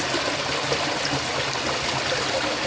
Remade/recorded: recorded